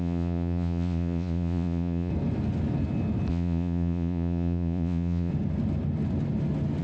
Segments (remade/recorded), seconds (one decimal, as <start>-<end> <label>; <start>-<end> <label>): 0.0-2.1 remade; 2.1-3.3 recorded; 3.3-5.3 remade; 5.3-6.8 recorded